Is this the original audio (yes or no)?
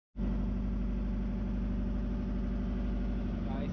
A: yes